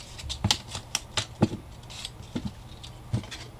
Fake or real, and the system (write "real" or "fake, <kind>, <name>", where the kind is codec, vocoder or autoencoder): real